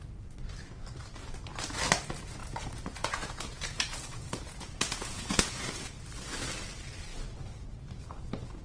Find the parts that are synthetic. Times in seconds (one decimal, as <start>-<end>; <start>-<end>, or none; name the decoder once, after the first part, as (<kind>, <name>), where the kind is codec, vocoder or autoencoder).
2.4-6.0 (vocoder, Vocos)